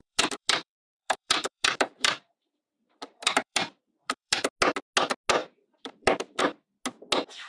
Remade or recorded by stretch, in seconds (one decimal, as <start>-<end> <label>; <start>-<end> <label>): 0.0-4.5 remade; 4.5-5.4 recorded; 5.4-6.4 remade; 6.4-7.5 recorded